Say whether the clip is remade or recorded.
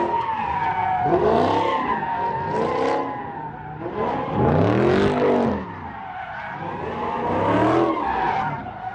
recorded